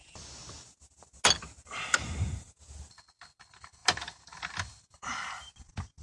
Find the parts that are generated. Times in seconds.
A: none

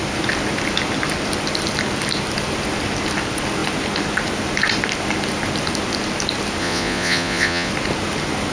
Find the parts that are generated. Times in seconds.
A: 6.6-7.7